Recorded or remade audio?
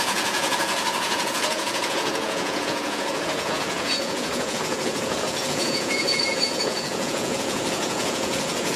remade